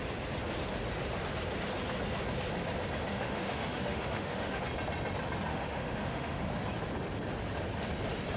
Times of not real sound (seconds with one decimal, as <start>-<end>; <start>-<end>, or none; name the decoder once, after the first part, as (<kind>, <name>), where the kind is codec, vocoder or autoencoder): 3.1-4.6 (autoencoder, DAC-VAE); 5.5-6.5